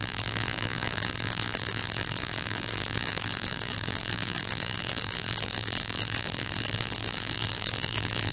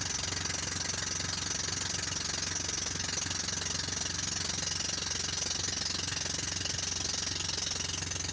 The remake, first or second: first